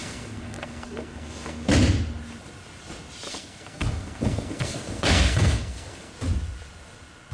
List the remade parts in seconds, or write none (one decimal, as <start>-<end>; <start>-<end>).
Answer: 0.0-1.7; 3.3-6.1